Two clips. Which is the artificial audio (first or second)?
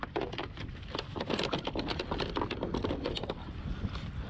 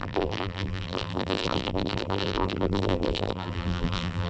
second